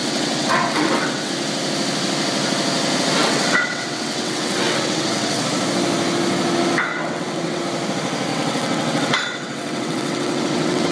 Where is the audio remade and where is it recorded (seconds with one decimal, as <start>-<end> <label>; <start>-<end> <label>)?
0.0-1.3 remade; 1.3-3.2 recorded; 3.2-5.4 remade; 5.4-6.9 recorded; 6.9-7.6 remade; 7.6-8.3 recorded; 8.3-10.9 remade